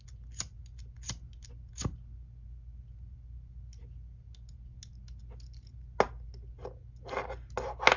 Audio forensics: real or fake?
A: real